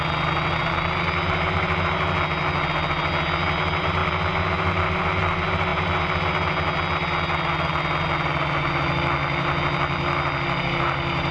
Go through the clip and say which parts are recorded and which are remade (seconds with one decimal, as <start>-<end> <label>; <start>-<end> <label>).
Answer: 0.0-11.3 recorded